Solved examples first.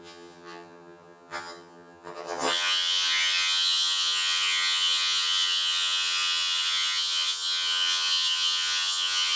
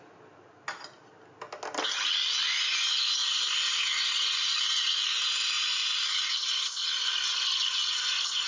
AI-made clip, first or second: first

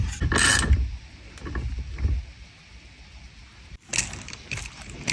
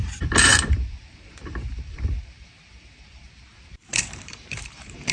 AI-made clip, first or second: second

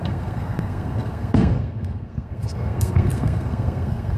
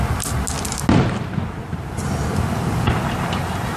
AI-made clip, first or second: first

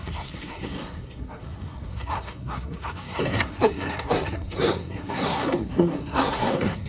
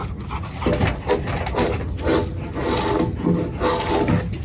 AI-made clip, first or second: first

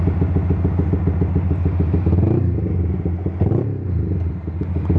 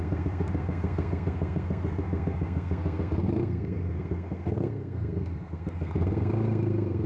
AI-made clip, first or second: second